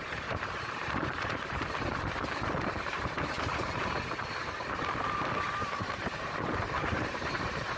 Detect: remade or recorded remade